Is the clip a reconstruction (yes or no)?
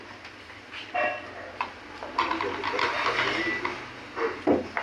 no